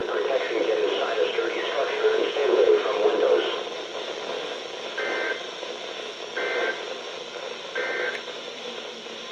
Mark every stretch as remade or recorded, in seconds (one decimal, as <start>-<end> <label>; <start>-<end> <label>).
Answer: 0.0-2.1 recorded; 2.1-2.7 remade; 2.7-9.3 recorded